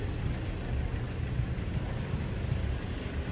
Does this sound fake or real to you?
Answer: real